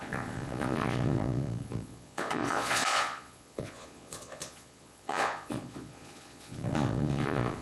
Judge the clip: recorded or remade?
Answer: remade